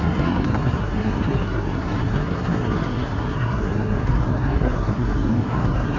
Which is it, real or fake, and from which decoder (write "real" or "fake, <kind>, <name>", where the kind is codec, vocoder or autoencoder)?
fake, codec, SNAC